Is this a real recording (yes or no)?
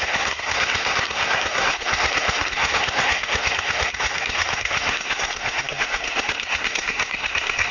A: no